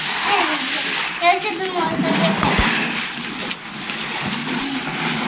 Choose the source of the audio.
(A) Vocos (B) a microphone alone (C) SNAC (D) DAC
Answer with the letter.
B